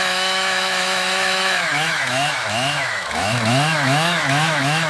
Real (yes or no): no